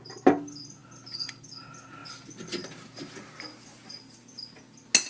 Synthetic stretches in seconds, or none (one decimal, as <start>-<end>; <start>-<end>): none